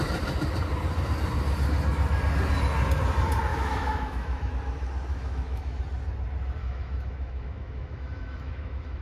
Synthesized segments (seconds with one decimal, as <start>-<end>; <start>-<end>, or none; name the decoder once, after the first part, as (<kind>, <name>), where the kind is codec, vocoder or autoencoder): 3.5-4.5 (autoencoder, DAC-VAE); 5.1-5.8; 6.6-9.0